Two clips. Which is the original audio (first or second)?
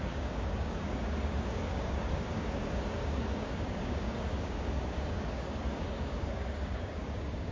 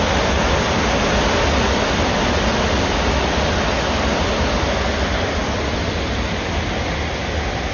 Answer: second